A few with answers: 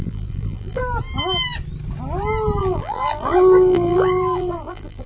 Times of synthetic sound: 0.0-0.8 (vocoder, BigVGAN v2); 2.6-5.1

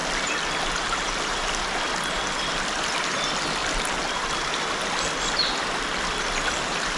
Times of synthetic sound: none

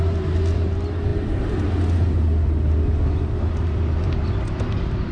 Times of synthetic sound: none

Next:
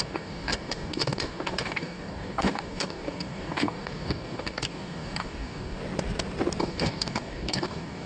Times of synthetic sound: 0.0-5.8 (codec, DAC); 6.6-8.1

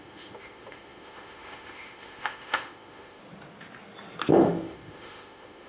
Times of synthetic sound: 0.0-3.2 (autoencoder, DAC-VAE); 4.3-5.7